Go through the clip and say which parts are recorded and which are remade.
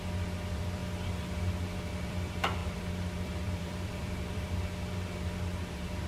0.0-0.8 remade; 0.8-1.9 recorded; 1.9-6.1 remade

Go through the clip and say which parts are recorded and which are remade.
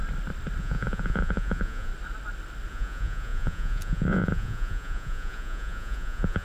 0.0-0.6 recorded; 0.6-1.9 remade; 1.9-2.7 recorded; 2.7-6.4 remade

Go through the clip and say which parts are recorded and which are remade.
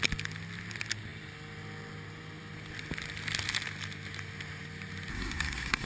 0.0-5.1 recorded; 5.1-5.9 remade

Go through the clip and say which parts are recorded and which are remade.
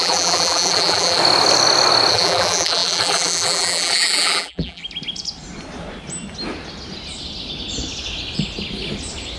0.0-1.2 remade; 1.2-2.1 recorded; 2.1-4.8 remade; 4.8-9.4 recorded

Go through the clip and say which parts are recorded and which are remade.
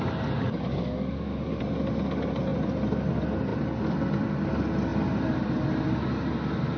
0.0-0.4 recorded; 0.4-1.6 remade; 1.6-6.8 recorded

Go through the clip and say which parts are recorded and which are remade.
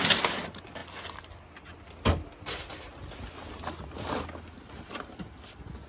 0.0-5.9 recorded